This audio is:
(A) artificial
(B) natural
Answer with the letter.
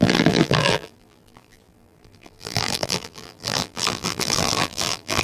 A